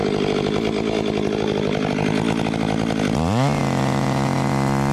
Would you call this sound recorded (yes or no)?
yes